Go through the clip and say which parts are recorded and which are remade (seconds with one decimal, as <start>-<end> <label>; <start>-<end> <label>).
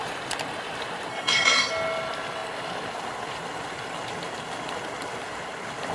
0.0-1.1 recorded; 1.1-1.7 remade; 1.7-5.9 recorded